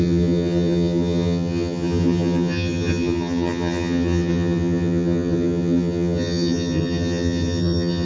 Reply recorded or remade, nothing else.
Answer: remade